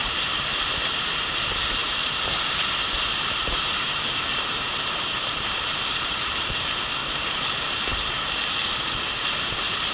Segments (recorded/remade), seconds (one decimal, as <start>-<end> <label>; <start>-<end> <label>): 0.0-1.4 remade; 1.4-1.8 recorded; 1.8-6.4 remade; 6.4-9.9 recorded